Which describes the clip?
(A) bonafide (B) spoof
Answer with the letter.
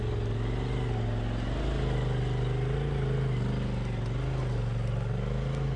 A